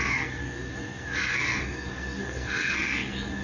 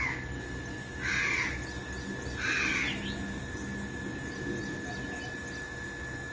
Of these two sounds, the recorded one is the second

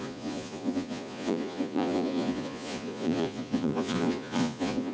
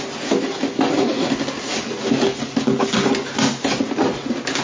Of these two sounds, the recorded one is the second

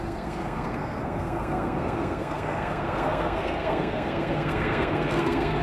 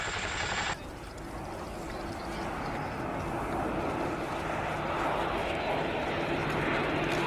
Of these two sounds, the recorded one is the second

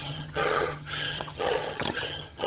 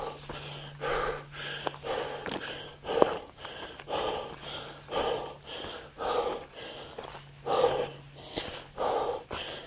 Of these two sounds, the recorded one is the second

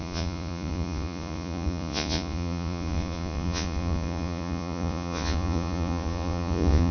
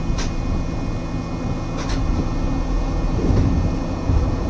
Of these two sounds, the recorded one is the second